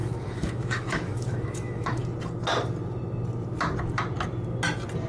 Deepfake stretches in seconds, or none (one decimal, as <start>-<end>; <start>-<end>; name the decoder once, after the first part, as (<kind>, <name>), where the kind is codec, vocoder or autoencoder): 0.0-2.0 (autoencoder, DAC-VAE)